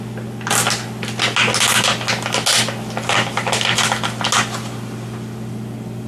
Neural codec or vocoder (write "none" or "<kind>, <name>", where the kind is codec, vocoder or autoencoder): none